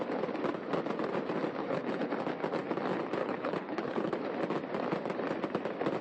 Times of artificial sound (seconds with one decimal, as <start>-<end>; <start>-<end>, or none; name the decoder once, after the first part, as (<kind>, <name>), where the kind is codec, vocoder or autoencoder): 1.6-2.1 (codec, HILCodec); 3.2-4.1